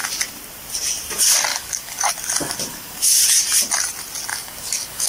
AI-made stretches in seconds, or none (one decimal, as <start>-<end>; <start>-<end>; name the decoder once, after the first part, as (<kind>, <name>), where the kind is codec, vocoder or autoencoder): 1.5-2.1 (codec, DAC); 2.7-3.2; 4.3-5.1